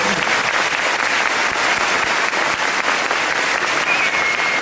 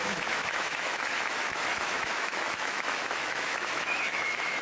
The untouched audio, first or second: first